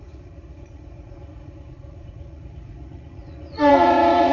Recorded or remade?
remade